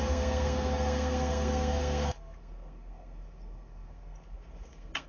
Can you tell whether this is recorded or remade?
remade